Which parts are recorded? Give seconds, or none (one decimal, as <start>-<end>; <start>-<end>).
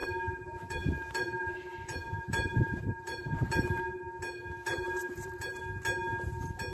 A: 4.0-4.7; 5.6-6.7